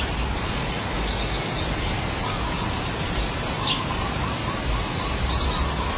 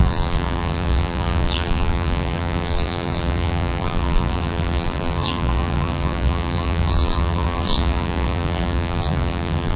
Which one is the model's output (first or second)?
second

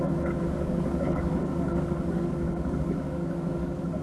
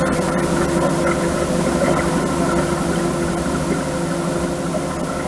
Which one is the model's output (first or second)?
first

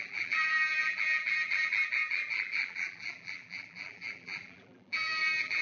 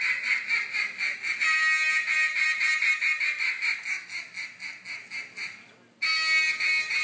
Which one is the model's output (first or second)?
first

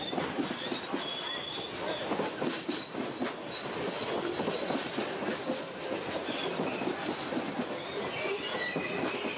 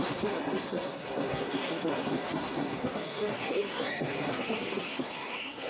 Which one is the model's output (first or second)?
second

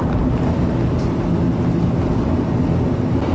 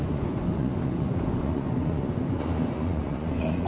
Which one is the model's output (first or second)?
second